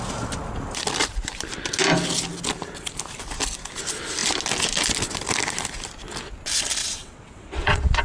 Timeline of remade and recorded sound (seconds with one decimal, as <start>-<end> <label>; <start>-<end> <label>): 0.0-6.8 recorded; 6.8-8.0 remade